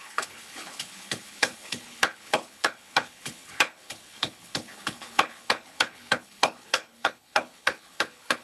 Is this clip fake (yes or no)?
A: yes